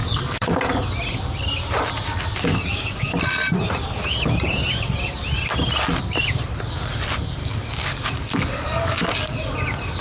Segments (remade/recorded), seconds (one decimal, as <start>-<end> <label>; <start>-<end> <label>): 0.0-0.6 remade; 0.6-2.5 recorded; 2.5-3.1 remade; 3.1-7.4 recorded; 7.4-9.1 remade; 9.1-10.0 recorded